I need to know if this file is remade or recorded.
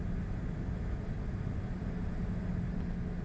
recorded